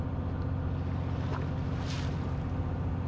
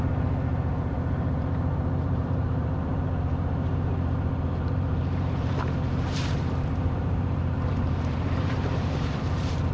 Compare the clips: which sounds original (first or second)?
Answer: first